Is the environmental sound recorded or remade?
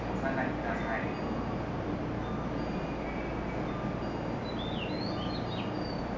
recorded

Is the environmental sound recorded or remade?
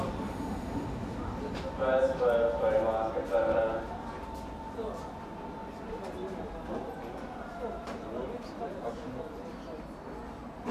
recorded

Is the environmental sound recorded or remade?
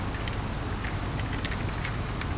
recorded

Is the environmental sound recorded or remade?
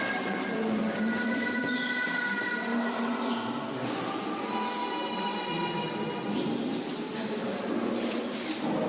recorded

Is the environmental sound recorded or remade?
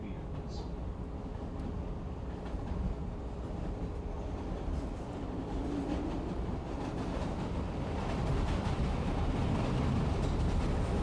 recorded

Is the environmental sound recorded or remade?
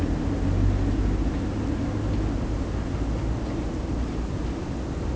recorded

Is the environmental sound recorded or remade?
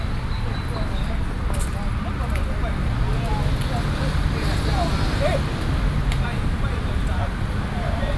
recorded